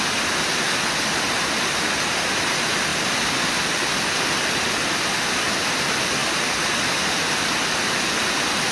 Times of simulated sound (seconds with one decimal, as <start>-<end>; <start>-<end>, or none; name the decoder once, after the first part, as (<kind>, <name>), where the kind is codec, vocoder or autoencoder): none